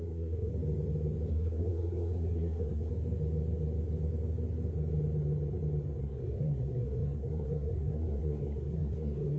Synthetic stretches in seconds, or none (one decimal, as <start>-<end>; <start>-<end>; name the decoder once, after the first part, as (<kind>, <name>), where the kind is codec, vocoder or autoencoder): 0.0-0.5 (codec, SNAC); 1.3-2.9; 6.0-9.4

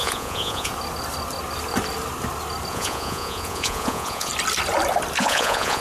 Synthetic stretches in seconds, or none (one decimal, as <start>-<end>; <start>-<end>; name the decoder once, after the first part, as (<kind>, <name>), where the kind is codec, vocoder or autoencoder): 0.0-0.7 (vocoder, Vocos); 2.7-4.3; 5.2-5.8

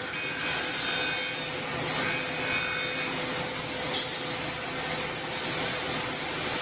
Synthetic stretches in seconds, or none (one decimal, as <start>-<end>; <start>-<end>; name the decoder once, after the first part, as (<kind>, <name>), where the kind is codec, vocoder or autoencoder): none

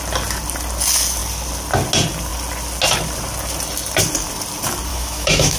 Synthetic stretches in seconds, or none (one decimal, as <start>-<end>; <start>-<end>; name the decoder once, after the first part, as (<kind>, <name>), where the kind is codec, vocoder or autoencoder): 4.9-5.6 (autoencoder, DAC-VAE)

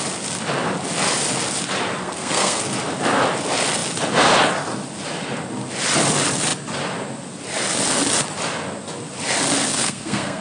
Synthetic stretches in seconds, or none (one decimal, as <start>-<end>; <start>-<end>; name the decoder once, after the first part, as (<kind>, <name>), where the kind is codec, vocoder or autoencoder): 2.0-2.6 (codec, SNAC); 9.7-10.4

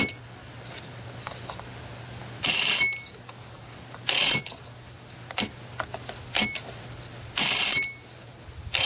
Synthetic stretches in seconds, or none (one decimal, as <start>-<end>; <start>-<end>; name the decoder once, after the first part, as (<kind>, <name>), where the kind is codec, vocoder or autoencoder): none

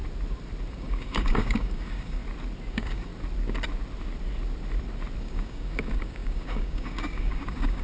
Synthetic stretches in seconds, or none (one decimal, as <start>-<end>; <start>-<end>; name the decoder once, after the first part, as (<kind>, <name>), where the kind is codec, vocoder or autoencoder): 0.7-2.2 (codec, DAC); 2.7-3.1; 5.2-7.8